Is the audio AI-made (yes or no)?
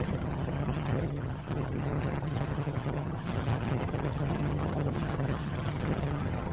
yes